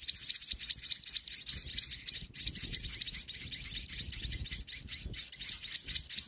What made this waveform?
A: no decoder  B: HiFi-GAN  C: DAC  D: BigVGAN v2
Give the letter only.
A